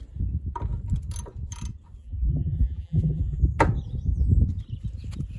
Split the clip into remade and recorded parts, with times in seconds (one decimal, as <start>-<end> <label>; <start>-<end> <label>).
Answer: 0.0-2.0 recorded; 2.0-3.4 remade; 3.4-5.4 recorded